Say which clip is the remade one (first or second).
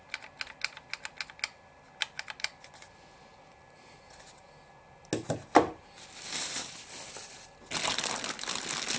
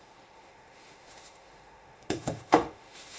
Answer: second